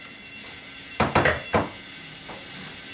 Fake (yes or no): no